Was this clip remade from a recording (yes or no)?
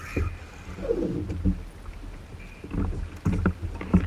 no